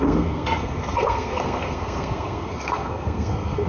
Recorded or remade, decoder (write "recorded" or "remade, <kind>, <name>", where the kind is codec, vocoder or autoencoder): remade, codec, SNAC